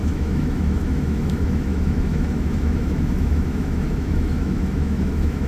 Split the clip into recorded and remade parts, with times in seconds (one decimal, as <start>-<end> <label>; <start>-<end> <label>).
0.0-5.5 remade

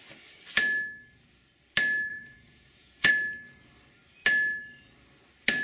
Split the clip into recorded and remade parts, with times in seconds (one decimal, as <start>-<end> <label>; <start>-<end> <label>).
0.0-2.1 recorded; 2.1-3.1 remade; 3.1-5.6 recorded

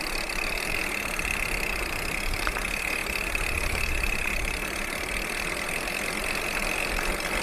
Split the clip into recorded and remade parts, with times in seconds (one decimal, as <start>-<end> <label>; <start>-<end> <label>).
0.0-7.4 recorded

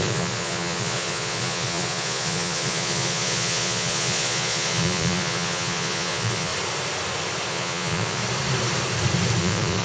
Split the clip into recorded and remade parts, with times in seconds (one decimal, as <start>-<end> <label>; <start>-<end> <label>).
0.0-6.5 remade; 6.5-7.5 recorded; 7.5-8.2 remade; 8.2-9.4 recorded; 9.4-9.8 remade

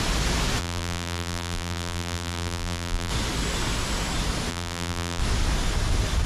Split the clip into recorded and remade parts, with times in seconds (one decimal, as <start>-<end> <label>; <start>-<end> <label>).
0.0-0.6 recorded; 0.6-3.1 remade; 3.1-4.5 recorded; 4.5-5.2 remade; 5.2-6.3 recorded

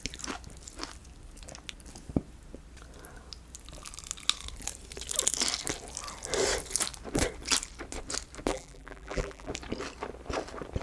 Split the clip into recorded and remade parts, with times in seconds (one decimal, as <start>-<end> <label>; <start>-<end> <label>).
0.0-8.5 recorded; 8.5-9.5 remade; 9.5-10.8 recorded

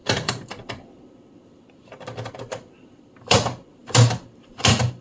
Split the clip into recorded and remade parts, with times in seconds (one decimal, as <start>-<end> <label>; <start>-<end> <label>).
0.0-5.0 remade

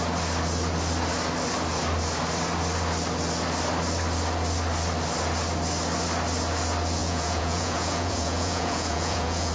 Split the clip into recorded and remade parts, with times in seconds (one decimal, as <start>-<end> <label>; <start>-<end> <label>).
0.0-7.0 recorded; 7.0-9.5 remade